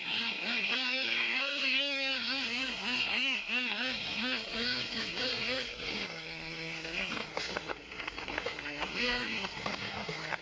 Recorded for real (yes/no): no